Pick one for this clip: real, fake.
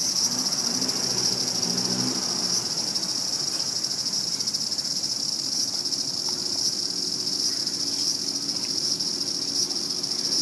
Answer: real